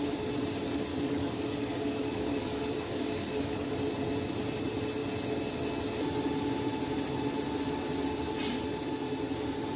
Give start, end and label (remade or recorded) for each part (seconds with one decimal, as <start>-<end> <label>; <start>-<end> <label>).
0.0-0.9 recorded; 0.9-3.7 remade; 3.7-9.8 recorded